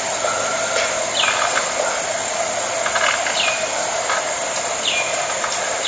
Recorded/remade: recorded